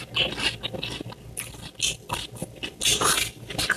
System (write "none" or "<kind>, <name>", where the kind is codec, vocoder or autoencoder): none